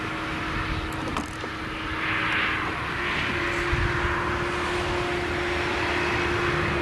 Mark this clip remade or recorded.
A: recorded